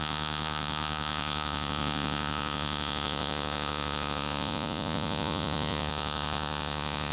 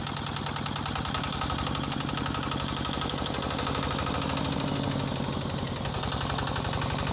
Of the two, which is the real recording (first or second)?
second